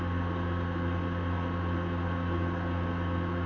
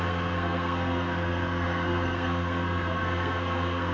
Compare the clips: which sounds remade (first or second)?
second